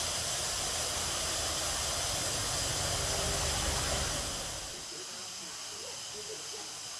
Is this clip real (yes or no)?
yes